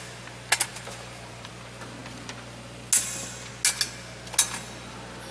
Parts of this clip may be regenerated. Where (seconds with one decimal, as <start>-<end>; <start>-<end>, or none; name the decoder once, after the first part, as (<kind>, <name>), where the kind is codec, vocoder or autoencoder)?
0.7-1.5 (vocoder, BigVGAN v2)